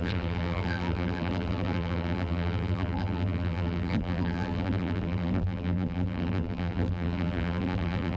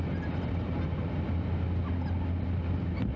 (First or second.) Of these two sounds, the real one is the second